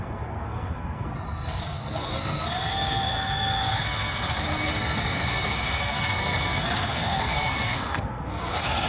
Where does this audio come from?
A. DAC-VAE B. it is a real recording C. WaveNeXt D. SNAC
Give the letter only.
D